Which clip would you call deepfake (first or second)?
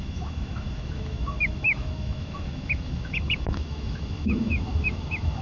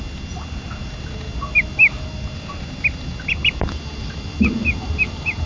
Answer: first